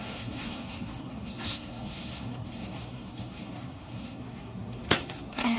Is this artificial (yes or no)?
yes